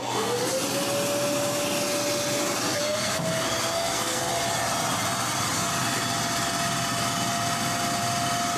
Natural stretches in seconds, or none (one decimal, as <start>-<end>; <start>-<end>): 0.4-2.8; 4.3-8.6